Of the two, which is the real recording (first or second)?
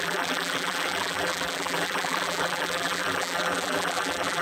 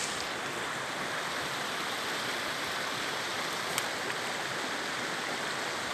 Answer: second